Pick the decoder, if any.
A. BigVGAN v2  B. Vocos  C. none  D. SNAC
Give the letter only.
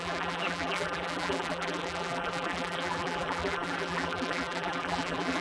A